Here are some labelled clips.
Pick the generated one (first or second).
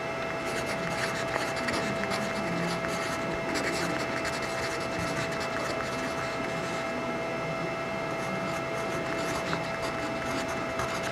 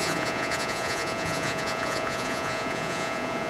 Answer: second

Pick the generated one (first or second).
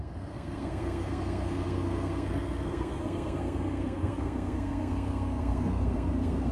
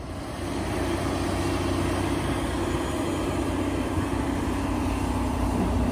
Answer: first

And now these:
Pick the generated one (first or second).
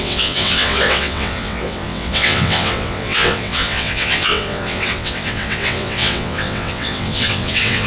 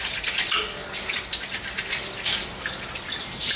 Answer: first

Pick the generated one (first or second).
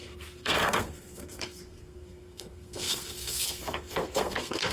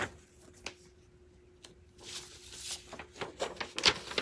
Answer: first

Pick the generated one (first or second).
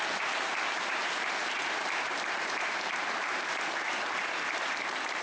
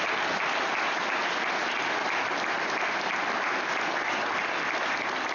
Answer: first